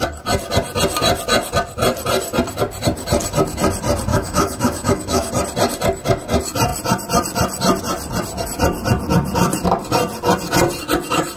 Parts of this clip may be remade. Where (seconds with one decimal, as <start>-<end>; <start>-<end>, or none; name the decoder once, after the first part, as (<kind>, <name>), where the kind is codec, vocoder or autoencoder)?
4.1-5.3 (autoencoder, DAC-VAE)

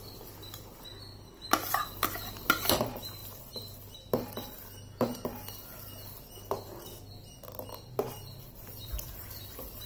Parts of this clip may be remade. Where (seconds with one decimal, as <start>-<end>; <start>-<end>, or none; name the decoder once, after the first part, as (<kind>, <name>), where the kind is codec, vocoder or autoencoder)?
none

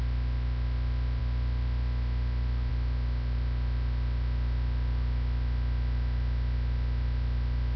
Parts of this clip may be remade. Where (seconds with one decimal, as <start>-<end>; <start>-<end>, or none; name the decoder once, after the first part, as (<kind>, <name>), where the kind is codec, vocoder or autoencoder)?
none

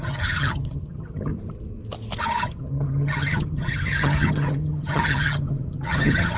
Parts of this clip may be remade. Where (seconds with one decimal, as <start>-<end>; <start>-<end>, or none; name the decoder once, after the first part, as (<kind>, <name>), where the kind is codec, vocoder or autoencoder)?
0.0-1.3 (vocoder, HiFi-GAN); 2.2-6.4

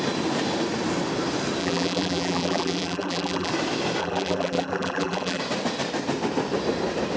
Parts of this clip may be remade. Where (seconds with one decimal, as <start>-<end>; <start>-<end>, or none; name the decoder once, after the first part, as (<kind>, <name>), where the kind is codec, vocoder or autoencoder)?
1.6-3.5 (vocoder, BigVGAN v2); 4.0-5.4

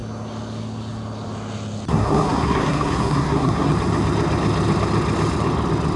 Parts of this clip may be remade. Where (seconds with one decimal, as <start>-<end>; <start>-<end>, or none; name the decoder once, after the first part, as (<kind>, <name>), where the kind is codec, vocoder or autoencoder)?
1.9-3.7 (codec, SNAC)